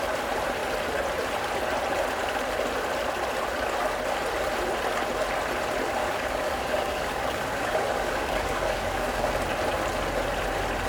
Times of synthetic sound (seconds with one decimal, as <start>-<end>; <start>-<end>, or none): 6.0-9.3